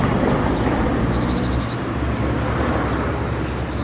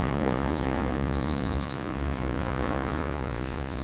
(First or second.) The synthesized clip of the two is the second